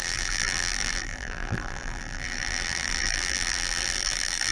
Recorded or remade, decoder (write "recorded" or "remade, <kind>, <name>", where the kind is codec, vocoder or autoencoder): remade, vocoder, BigVGAN v2